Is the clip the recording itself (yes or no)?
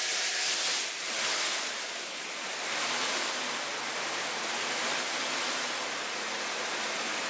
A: yes